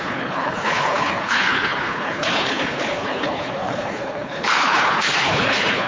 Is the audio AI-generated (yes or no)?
yes